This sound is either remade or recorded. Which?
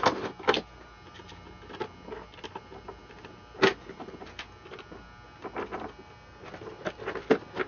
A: recorded